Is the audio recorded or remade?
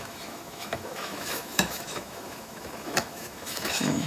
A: remade